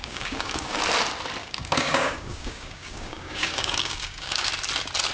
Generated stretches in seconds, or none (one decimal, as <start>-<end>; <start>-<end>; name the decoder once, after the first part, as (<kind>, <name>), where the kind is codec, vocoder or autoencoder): 0.0-0.8 (codec, DAC); 1.4-4.5